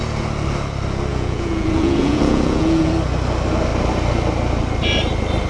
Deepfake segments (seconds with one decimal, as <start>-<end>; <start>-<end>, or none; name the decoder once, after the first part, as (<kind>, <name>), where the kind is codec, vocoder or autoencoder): 1.1-2.9 (vocoder, Vocos)